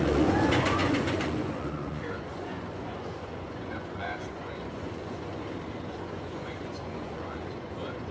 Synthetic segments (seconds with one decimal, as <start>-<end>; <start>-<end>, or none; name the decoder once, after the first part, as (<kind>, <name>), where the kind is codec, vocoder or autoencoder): 0.0-5.3 (vocoder, Vocos); 5.8-8.1